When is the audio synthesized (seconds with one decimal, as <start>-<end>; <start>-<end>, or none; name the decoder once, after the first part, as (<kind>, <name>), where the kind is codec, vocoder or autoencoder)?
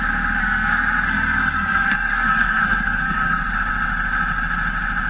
0.4-3.5 (codec, SNAC)